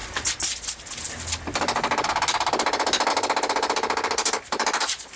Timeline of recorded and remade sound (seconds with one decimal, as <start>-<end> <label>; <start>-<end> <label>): 0.0-3.1 recorded; 3.1-5.2 remade